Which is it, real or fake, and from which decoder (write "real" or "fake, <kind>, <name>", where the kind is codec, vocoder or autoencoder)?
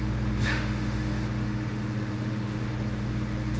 fake, autoencoder, DAC-VAE